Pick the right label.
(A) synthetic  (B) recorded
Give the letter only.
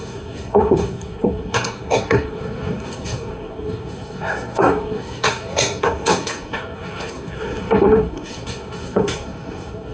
A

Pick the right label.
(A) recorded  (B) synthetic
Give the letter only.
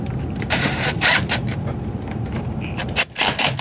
B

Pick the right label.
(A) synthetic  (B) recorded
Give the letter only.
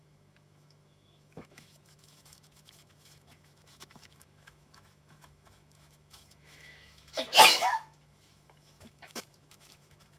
A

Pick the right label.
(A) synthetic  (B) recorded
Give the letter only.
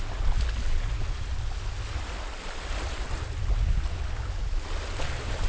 B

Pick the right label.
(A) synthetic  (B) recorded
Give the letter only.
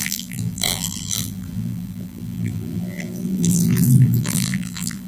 A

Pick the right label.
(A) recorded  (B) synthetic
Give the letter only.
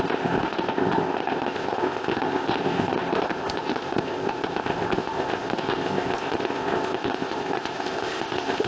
B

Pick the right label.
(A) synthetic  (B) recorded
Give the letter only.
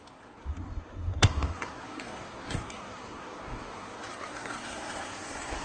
A